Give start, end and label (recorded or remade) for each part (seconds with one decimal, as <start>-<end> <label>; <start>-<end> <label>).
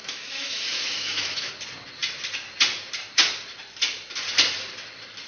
0.0-1.5 remade; 1.5-5.3 recorded